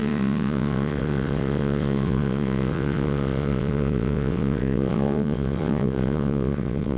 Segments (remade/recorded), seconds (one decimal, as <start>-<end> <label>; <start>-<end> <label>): 0.0-7.0 remade